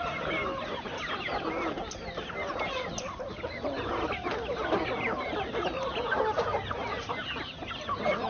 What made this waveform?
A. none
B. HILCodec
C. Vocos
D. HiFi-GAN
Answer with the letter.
A